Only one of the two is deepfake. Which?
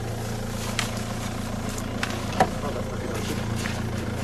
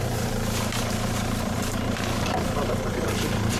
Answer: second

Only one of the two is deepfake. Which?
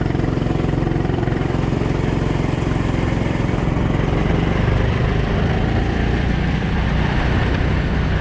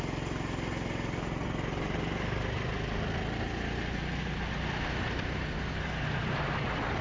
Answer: first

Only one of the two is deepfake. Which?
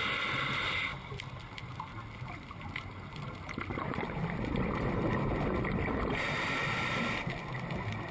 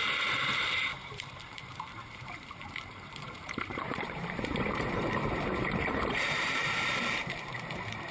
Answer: second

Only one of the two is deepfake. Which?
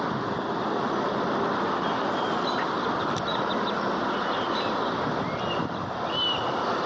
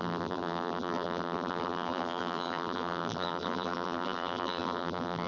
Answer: second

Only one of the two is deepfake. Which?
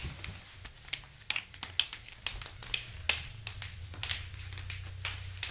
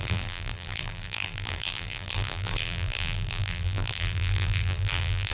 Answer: second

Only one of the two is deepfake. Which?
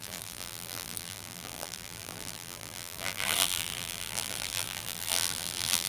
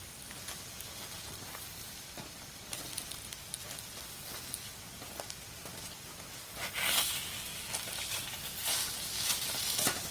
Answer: first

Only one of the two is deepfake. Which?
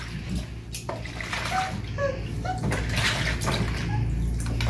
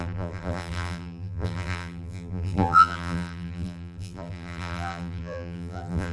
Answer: second